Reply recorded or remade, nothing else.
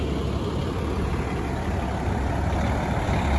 recorded